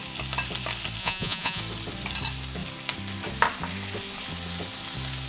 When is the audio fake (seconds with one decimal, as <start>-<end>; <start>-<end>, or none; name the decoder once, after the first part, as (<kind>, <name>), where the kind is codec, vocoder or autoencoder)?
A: 1.0-1.6 (vocoder, Vocos)